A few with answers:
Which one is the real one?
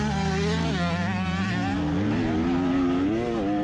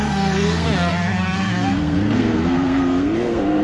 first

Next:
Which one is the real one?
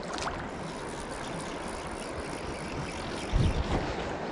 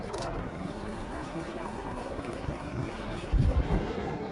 first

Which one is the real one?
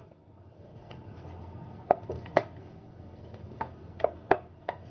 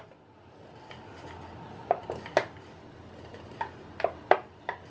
second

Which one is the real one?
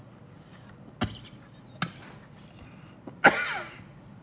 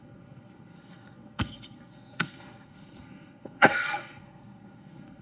first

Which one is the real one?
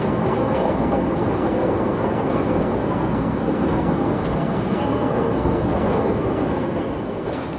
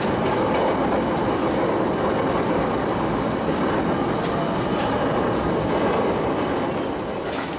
second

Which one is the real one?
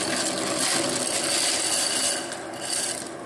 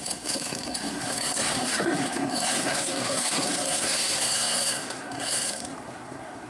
first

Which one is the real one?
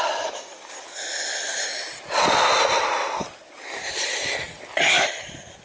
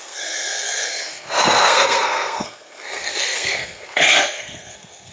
first